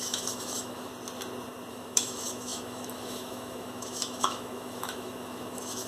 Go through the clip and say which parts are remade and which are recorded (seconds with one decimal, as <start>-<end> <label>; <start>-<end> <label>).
0.0-0.9 remade; 0.9-1.7 recorded; 1.7-5.9 remade